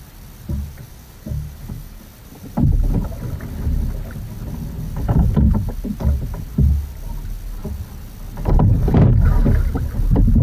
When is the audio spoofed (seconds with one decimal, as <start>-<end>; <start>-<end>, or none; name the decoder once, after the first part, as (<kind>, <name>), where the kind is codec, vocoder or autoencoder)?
0.9-2.0 (codec, DAC)